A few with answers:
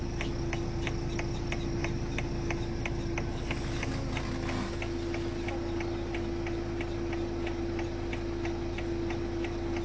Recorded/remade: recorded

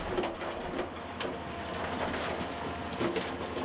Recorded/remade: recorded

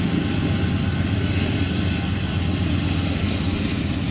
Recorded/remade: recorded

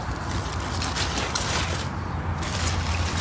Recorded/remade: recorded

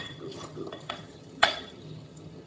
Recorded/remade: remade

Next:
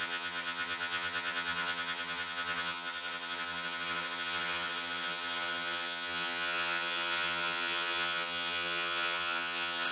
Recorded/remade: remade